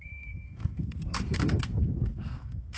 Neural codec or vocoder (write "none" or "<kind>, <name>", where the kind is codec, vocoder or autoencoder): codec, SNAC